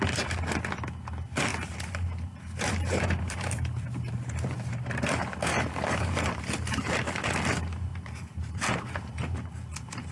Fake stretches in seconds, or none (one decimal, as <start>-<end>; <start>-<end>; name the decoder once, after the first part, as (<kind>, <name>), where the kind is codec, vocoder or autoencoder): 1.5-5.1 (vocoder, BigVGAN v2); 5.5-6.9; 7.9-8.6